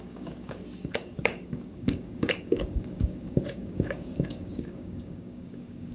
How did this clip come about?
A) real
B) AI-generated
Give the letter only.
B